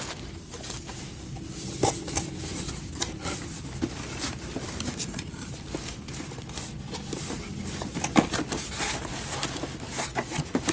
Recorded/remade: recorded